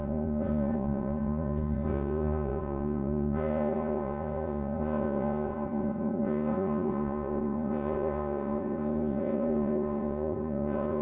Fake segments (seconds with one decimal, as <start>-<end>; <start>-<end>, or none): 0.0-11.0